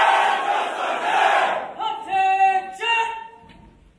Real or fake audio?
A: real